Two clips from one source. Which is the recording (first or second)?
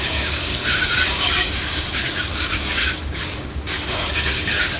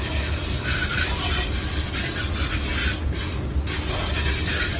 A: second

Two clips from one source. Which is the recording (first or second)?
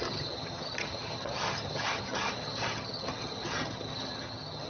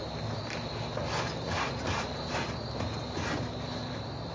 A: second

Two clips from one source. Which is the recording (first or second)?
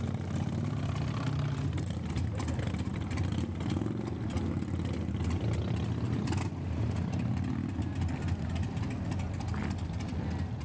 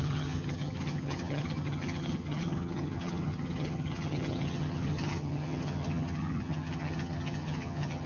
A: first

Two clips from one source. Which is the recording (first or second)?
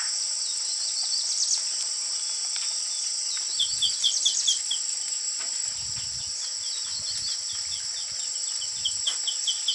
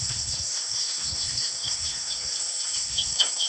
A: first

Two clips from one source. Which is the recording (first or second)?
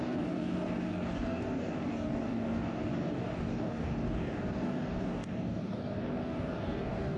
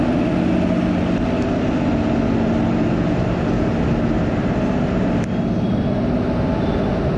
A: second